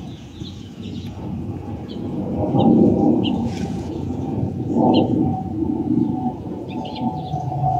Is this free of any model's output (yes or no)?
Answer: no